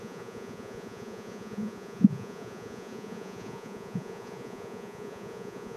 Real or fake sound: fake